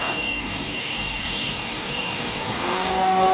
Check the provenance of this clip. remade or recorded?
remade